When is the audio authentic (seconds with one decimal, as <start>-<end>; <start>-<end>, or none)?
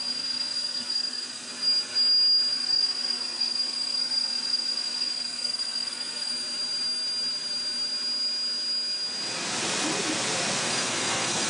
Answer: 1.5-2.5; 6.3-10.6